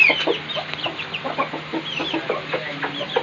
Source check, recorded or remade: recorded